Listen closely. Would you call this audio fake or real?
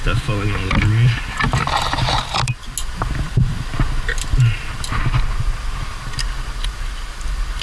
real